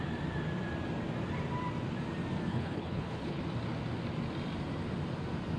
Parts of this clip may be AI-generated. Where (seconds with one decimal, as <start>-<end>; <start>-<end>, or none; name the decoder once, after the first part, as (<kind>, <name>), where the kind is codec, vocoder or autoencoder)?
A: 2.5-3.4 (codec, HILCodec)